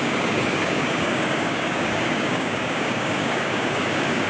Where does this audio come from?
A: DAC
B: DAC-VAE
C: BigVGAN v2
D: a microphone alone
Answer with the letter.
A